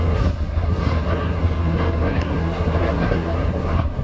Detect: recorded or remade remade